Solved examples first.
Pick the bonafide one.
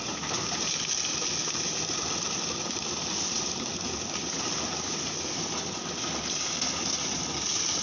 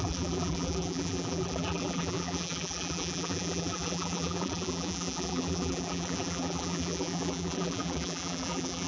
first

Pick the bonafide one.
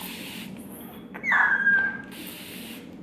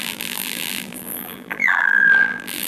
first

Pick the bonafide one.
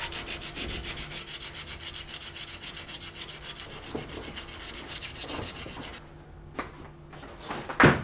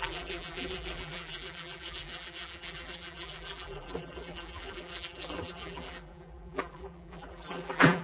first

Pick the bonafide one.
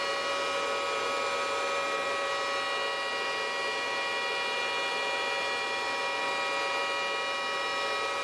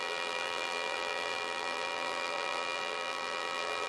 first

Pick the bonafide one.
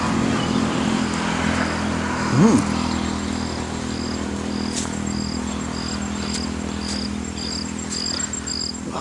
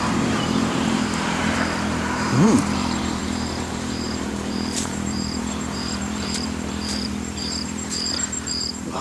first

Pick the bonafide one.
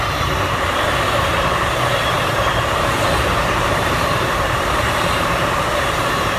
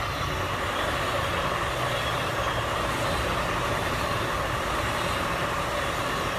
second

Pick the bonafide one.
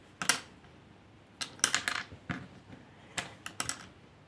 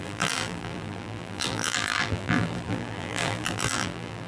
first